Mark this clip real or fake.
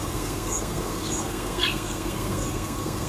fake